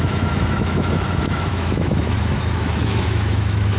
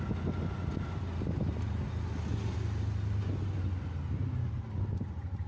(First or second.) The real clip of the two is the second